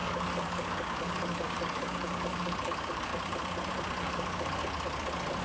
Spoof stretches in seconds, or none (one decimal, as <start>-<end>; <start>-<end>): 0.0-3.1; 4.0-4.6